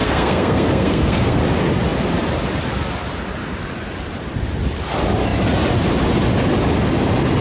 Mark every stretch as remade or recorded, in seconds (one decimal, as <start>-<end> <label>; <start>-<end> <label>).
0.0-1.4 remade; 1.4-7.4 recorded